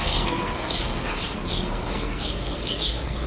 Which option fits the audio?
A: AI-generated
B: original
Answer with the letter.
A